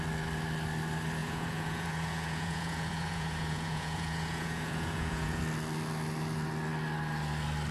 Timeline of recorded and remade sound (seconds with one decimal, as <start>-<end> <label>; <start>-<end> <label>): 0.0-1.2 recorded; 1.2-5.4 remade; 5.4-7.7 recorded